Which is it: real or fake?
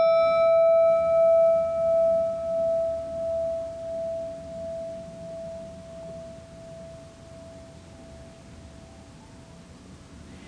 real